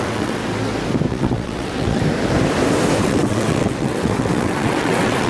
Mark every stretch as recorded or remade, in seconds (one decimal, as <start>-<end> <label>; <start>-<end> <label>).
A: 0.0-0.4 remade; 0.4-1.1 recorded; 1.1-2.0 remade; 2.0-3.0 recorded; 3.0-5.3 remade